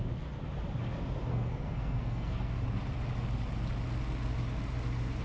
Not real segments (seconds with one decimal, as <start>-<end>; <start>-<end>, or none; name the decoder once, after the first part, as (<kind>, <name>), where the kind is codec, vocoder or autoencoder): 1.3-2.5 (codec, SNAC)